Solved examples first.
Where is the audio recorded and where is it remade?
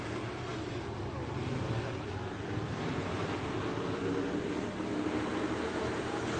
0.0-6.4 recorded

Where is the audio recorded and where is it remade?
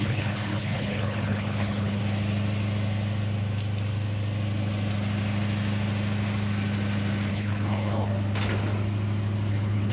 0.0-2.0 remade; 2.0-7.3 recorded; 7.3-8.1 remade; 8.1-9.5 recorded; 9.5-9.9 remade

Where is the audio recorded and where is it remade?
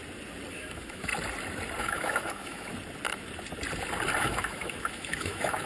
0.0-0.5 recorded; 0.5-1.1 remade; 1.1-1.8 recorded; 1.8-2.7 remade; 2.7-4.2 recorded; 4.2-5.7 remade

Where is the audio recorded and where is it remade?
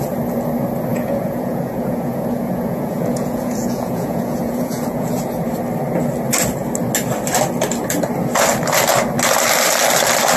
0.0-0.9 recorded; 0.9-5.2 remade; 5.2-10.4 recorded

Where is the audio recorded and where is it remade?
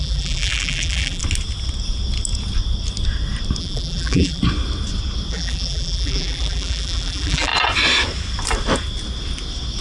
0.0-1.2 remade; 1.2-3.6 recorded; 3.6-4.4 remade; 4.4-5.3 recorded; 5.3-7.5 remade; 7.5-9.8 recorded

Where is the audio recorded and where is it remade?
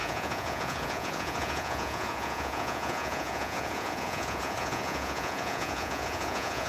0.0-6.7 remade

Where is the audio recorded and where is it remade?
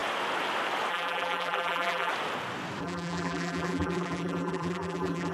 0.0-0.9 recorded; 0.9-2.1 remade; 2.1-2.8 recorded; 2.8-5.3 remade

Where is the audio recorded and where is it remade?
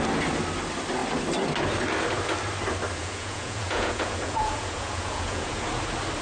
0.0-3.0 recorded; 3.0-5.7 remade; 5.7-6.2 recorded